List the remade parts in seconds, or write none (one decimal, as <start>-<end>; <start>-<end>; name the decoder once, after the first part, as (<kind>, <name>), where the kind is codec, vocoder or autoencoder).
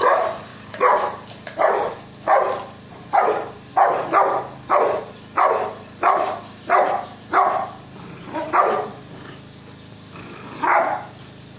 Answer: 0.0-3.7 (vocoder, BigVGAN v2); 4.3-11.6